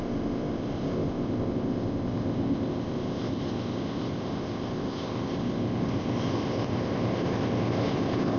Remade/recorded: remade